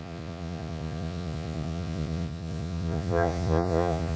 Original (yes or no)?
no